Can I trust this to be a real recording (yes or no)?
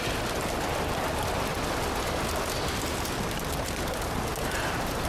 yes